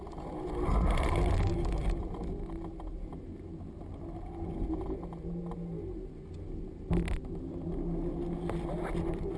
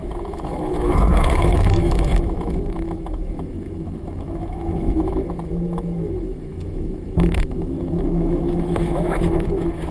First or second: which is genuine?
first